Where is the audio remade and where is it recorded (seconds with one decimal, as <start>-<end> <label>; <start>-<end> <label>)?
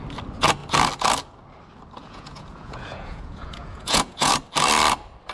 0.0-2.0 recorded; 2.0-4.3 remade; 4.3-5.3 recorded